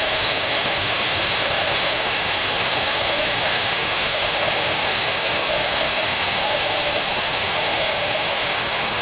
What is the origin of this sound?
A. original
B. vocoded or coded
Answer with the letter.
B